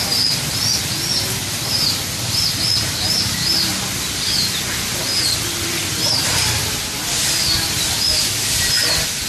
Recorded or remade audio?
recorded